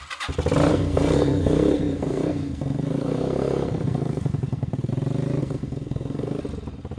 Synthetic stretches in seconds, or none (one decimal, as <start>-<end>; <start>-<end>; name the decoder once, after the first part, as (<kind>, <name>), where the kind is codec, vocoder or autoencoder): 0.7-4.9 (codec, SNAC); 5.4-6.4